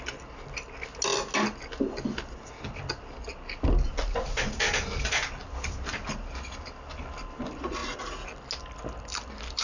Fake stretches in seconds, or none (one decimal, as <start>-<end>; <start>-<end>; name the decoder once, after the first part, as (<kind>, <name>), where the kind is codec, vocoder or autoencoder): none